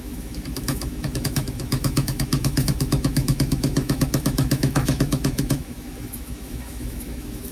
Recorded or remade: remade